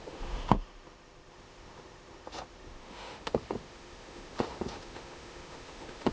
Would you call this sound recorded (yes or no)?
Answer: no